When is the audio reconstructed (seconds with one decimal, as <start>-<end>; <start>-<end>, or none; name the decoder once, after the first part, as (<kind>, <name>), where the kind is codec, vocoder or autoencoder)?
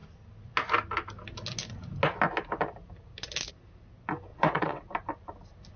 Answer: 4.3-4.8 (vocoder, WaveNeXt)